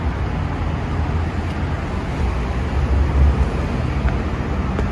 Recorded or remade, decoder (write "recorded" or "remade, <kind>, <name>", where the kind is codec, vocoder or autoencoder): recorded